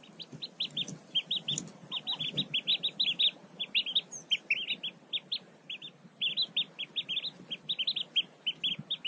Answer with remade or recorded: recorded